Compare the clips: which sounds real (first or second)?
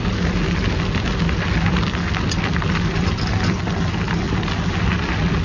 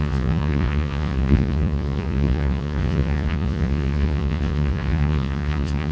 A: first